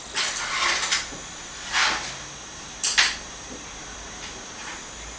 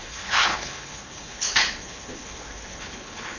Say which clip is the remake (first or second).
second